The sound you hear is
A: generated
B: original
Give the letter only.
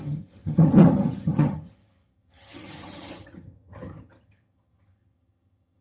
A